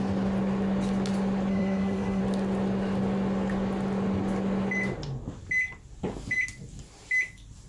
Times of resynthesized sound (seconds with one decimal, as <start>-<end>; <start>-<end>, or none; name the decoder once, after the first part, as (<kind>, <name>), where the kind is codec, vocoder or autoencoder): 1.5-2.2 (codec, SNAC)